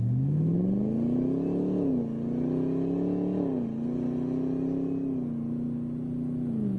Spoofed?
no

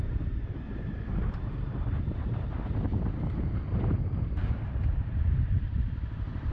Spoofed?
yes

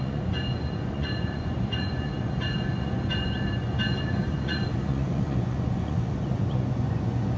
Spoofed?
yes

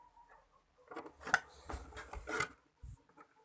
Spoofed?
no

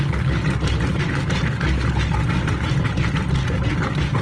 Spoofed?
no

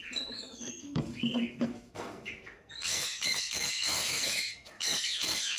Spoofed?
yes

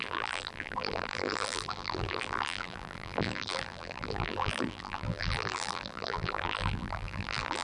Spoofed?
yes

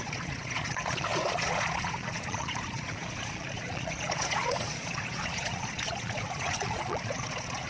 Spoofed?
yes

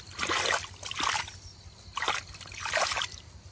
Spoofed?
no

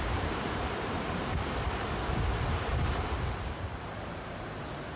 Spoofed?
yes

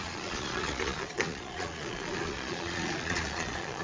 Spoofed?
yes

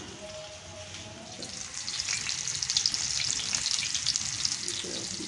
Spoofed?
no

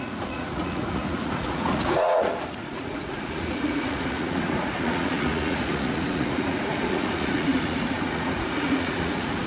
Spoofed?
yes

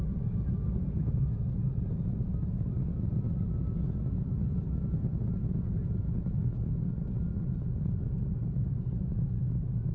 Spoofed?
no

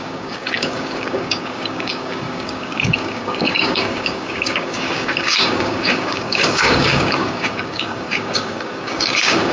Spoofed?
yes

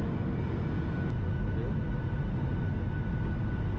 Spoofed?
no